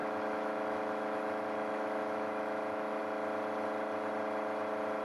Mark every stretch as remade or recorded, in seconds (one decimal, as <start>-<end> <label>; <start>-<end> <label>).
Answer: 0.0-3.0 remade; 3.0-5.0 recorded